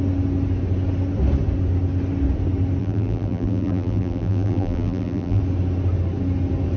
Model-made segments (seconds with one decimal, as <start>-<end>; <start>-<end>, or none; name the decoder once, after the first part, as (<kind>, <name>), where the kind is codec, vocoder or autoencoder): 2.8-5.4 (vocoder, BigVGAN v2)